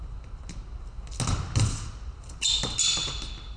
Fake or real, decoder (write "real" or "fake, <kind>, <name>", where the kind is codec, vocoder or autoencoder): real